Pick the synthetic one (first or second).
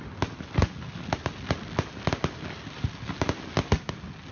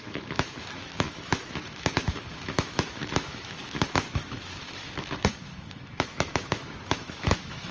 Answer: second